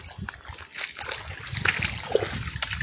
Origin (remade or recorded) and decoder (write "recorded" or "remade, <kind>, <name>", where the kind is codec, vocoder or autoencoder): recorded